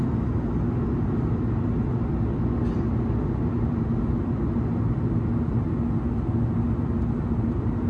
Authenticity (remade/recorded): recorded